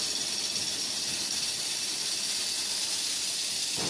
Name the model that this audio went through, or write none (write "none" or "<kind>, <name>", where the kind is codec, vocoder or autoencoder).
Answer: none